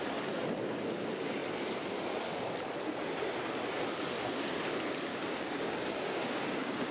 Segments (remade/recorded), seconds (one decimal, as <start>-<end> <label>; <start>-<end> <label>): 0.0-5.1 recorded; 5.1-6.9 remade

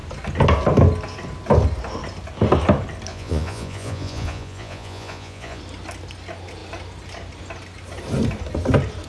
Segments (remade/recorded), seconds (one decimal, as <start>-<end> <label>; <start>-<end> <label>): 0.0-3.1 recorded; 3.1-5.6 remade; 5.6-9.1 recorded